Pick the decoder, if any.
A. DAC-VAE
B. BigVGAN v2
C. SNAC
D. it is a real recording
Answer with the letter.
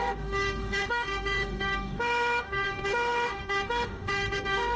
A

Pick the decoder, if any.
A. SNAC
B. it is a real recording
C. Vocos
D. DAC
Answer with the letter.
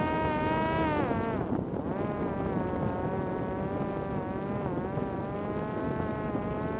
B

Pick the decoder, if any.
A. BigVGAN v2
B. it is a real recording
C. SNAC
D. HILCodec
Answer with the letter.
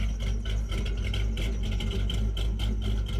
B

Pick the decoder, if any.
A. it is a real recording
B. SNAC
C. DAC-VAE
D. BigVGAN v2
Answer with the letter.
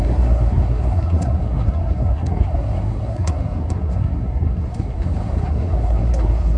B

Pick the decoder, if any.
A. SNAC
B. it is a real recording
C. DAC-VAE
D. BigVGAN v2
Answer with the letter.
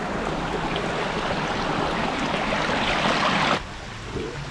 B